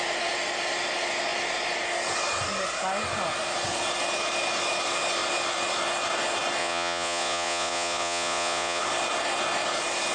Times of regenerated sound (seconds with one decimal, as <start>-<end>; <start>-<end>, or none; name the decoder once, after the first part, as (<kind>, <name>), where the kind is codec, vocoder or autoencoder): 6.6-8.8 (vocoder, Vocos)